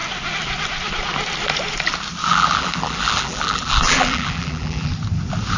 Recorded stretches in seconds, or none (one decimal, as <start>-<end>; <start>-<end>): 0.0-2.2; 4.9-5.6